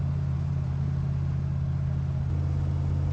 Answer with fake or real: real